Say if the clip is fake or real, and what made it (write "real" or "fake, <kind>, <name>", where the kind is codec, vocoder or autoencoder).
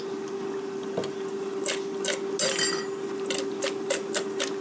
real